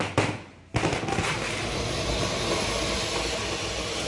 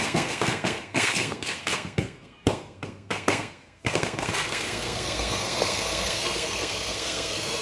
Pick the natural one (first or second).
first